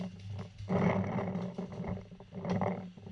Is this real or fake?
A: real